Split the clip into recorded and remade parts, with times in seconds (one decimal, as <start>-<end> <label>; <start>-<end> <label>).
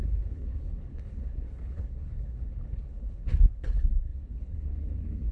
0.0-5.3 remade